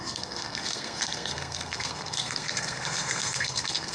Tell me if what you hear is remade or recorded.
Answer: remade